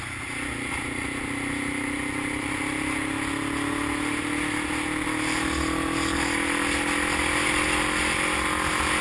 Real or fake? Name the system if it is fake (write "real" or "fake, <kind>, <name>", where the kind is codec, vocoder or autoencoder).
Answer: real